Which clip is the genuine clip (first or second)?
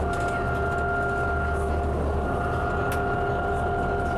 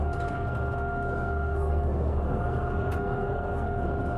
first